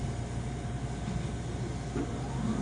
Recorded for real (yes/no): yes